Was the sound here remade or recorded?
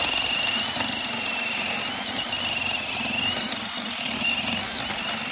recorded